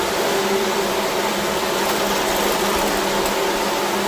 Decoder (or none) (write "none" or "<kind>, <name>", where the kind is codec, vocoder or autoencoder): none